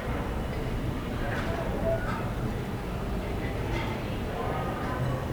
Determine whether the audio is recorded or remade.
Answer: remade